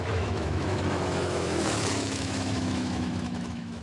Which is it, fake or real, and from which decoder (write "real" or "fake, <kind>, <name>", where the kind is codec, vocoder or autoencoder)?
fake, autoencoder, DAC-VAE